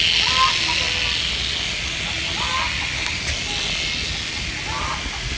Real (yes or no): yes